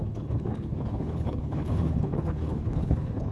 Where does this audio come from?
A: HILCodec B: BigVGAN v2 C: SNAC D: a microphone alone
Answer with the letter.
A